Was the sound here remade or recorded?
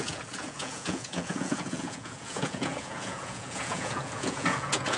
remade